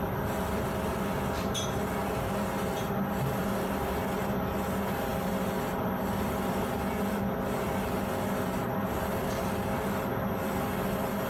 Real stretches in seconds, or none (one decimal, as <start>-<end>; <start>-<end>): 0.0-11.3